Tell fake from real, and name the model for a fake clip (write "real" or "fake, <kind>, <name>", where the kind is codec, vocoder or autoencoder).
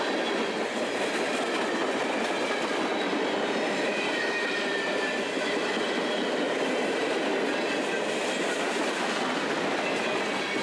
real